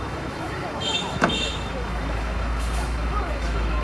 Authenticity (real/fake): fake